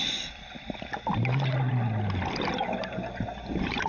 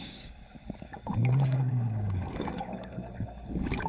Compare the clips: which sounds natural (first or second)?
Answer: first